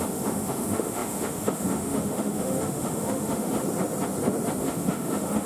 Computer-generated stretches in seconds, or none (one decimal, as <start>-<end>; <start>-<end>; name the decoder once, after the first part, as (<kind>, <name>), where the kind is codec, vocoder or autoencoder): 0.0-3.6 (autoencoder, DAC-VAE); 4.6-5.5